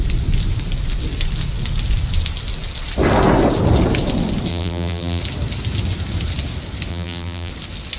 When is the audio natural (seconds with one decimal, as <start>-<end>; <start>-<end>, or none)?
0.0-4.5; 5.2-6.9; 7.5-8.0